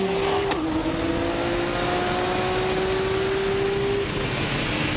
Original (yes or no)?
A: yes